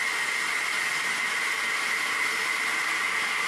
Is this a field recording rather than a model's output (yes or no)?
yes